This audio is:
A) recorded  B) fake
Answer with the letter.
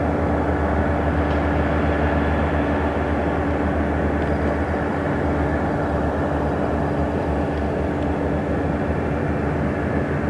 A